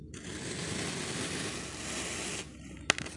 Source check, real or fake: real